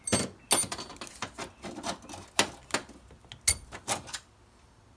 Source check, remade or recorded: recorded